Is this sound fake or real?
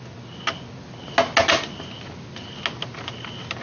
real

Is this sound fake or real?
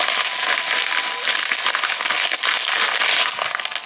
real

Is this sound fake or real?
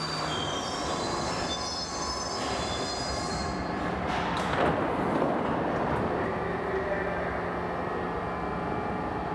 real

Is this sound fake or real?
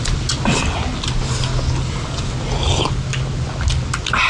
real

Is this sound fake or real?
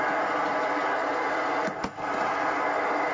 real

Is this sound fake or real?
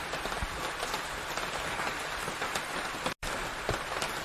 real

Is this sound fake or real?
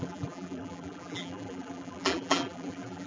fake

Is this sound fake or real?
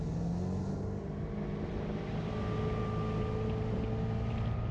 real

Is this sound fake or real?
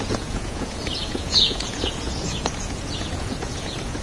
fake